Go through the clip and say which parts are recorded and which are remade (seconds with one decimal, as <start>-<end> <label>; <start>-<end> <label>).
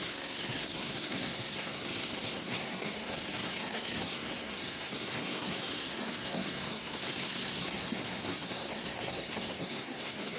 0.0-10.4 remade